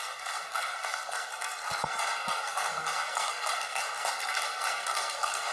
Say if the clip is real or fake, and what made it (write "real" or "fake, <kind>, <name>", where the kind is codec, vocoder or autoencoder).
fake, codec, SNAC